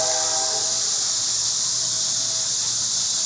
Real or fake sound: real